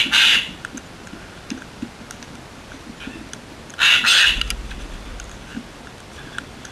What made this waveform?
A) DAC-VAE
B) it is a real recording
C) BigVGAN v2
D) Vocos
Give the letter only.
B